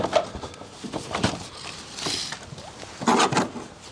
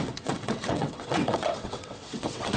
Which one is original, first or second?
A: first